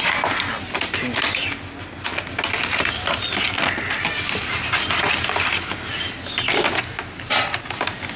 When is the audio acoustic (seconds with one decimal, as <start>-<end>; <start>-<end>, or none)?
0.0-8.2